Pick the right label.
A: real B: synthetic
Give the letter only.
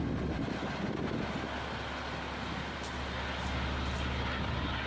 A